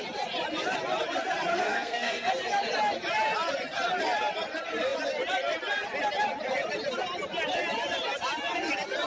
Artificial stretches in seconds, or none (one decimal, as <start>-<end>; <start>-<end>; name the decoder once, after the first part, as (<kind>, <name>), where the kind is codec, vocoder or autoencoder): 1.5-2.3 (codec, SNAC)